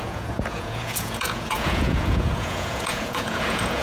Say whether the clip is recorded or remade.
remade